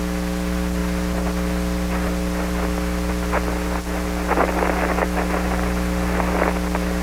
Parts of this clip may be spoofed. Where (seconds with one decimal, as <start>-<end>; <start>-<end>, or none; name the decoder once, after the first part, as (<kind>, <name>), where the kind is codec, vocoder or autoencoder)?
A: none